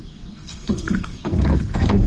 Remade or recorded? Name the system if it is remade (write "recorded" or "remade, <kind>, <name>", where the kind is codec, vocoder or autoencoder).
remade, codec, SNAC